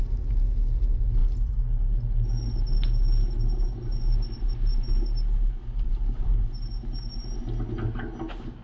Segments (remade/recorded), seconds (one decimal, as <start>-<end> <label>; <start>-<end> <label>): 0.0-8.6 recorded